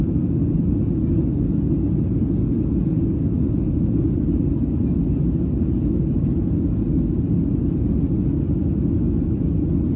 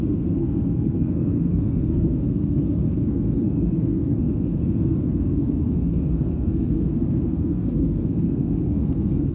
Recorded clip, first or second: first